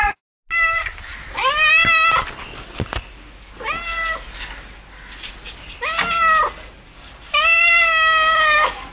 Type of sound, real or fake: real